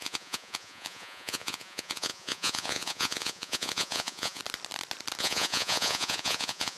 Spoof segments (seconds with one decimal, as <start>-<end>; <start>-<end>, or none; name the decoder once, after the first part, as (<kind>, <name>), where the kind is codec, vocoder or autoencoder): 0.0-4.4 (vocoder, Vocos); 5.2-6.8